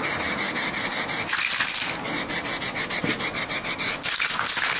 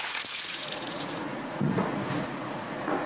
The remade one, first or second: second